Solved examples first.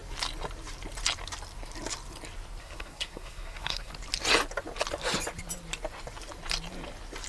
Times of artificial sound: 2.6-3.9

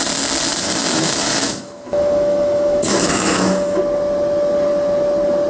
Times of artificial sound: 0.5-3.8

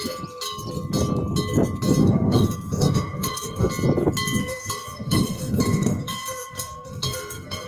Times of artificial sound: 2.0-3.7; 4.4-7.7

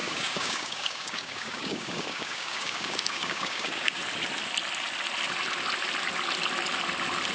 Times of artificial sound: 0.0-4.0

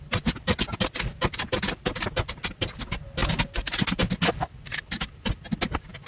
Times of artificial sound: none

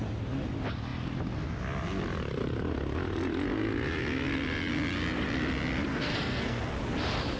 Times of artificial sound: 5.9-6.6

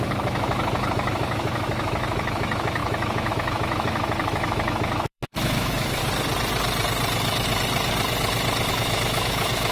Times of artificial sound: 0.0-6.0; 8.7-9.7